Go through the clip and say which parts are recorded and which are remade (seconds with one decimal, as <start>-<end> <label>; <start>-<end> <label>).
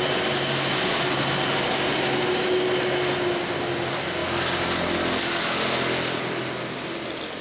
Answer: 0.0-7.4 recorded